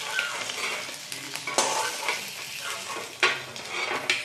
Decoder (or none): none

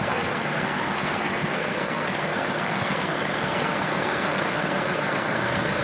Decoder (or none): codec, SNAC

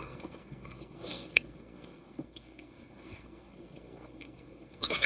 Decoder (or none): codec, SNAC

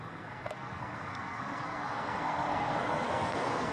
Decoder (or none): codec, SNAC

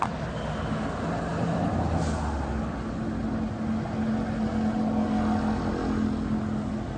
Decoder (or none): none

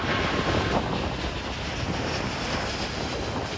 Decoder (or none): none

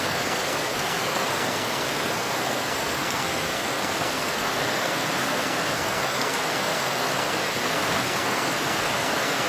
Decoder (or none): codec, SNAC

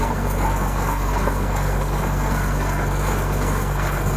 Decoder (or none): codec, SNAC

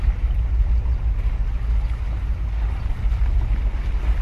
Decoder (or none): none